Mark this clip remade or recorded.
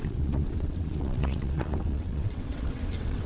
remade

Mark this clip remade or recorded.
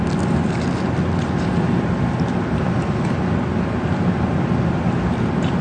recorded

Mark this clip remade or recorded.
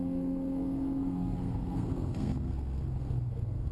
remade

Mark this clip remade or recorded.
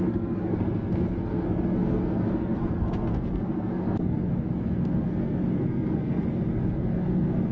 remade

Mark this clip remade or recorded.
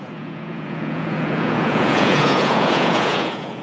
remade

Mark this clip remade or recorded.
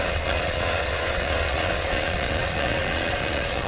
remade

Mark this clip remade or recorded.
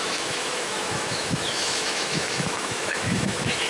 remade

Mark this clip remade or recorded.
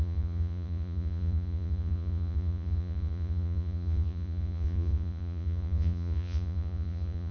remade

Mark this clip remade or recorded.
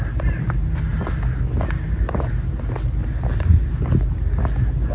recorded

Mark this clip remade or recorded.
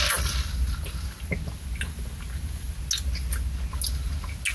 recorded